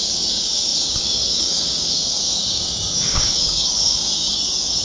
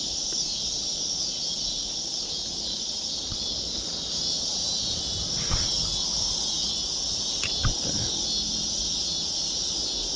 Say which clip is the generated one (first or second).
first